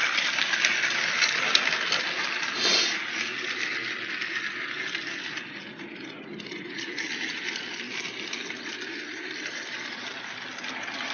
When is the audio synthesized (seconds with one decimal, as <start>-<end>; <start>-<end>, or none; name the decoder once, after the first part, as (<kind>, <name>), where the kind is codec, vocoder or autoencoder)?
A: none